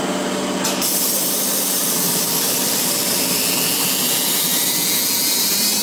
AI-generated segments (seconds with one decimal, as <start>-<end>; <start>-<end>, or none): none

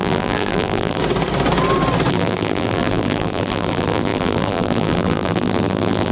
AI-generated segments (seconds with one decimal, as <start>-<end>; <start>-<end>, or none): 0.0-1.0; 2.1-6.1

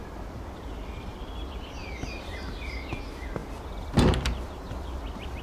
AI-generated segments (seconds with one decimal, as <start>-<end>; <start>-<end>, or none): none

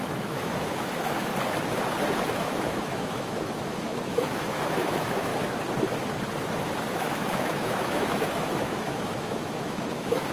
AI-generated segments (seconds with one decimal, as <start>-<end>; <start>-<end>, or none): 0.0-1.3; 2.3-5.3; 6.9-10.3

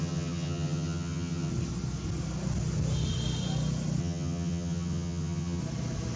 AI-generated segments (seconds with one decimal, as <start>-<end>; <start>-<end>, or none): 0.0-1.5; 4.0-5.6

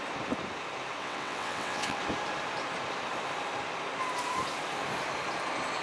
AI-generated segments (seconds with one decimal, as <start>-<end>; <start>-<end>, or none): 1.0-2.0

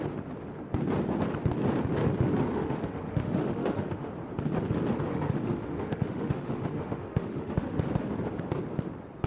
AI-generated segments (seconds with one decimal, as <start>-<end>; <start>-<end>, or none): 2.5-4.1; 5.1-8.1

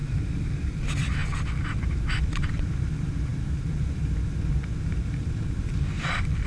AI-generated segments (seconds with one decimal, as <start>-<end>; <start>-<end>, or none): 0.0-0.7